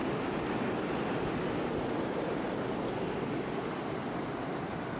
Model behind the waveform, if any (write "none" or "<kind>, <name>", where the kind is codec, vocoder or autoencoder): none